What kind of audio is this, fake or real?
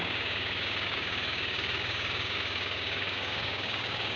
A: fake